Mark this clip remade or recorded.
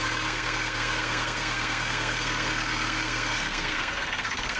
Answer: remade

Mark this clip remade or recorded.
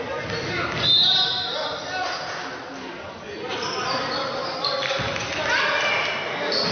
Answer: recorded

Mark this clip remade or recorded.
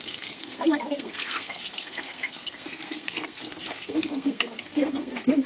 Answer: remade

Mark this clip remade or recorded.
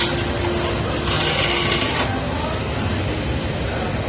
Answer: recorded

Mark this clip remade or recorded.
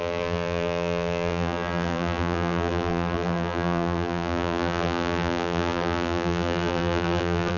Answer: remade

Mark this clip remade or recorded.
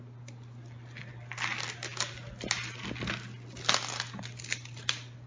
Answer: recorded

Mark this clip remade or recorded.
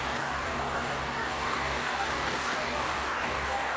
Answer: remade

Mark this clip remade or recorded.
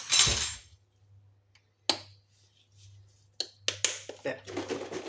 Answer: recorded